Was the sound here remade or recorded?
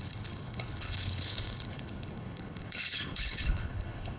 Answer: remade